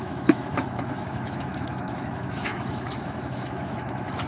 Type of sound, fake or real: fake